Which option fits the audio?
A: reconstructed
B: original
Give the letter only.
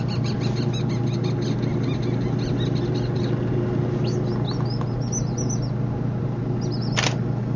B